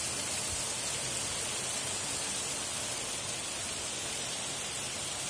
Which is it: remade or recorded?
recorded